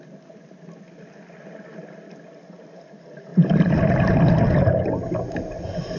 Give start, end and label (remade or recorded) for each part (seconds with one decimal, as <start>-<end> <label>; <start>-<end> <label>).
0.0-6.0 recorded